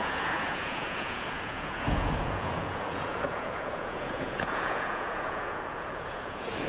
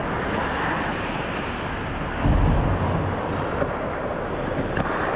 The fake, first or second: first